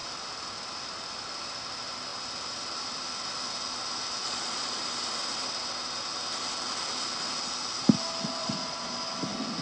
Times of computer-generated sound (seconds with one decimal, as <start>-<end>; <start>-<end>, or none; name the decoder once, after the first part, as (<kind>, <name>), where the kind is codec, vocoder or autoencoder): 4.2-4.7 (vocoder, Vocos); 8.4-9.0

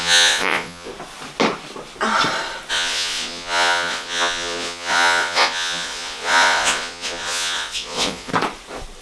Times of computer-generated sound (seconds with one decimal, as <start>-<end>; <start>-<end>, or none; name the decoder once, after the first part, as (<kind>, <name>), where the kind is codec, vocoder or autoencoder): 0.0-0.9 (vocoder, Vocos); 2.7-8.3

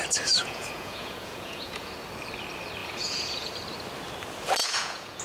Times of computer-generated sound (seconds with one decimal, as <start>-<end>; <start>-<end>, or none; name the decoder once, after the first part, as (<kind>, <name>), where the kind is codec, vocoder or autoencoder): 0.4-1.9 (vocoder, Vocos); 2.8-3.5; 4.6-5.2

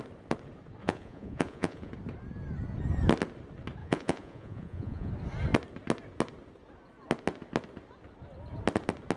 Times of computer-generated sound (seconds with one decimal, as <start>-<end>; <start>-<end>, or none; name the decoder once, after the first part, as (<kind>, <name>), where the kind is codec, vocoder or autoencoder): 0.8-1.9 (vocoder, Vocos); 3.8-5.1

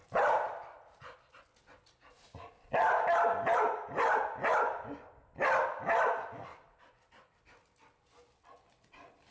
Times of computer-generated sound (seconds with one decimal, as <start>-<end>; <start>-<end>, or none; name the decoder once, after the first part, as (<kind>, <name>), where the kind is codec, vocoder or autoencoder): none